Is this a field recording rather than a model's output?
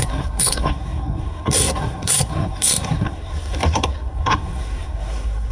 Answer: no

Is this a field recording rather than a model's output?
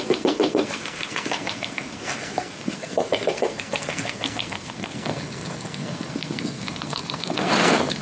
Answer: no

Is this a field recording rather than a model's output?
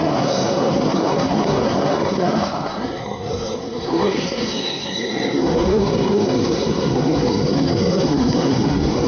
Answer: no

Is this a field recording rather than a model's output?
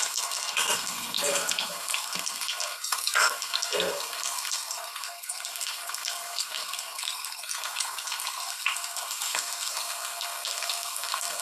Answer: no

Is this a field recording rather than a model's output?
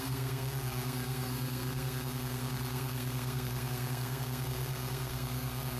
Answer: no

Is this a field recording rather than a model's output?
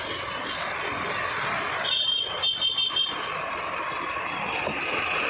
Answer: yes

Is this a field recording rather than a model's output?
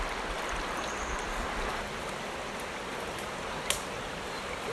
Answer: yes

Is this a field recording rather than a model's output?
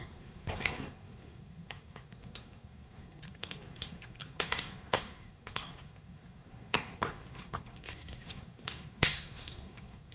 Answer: no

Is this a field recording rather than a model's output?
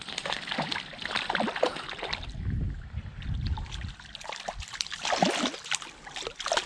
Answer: yes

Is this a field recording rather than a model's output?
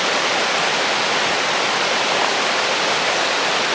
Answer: yes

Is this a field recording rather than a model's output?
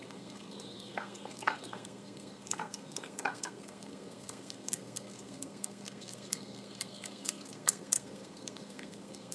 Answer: no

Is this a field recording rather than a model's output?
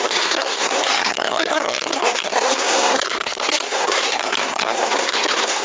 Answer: no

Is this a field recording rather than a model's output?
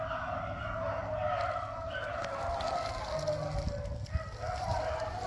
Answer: yes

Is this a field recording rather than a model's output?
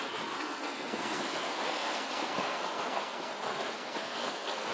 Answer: no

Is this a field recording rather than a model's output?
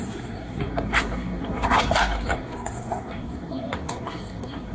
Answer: no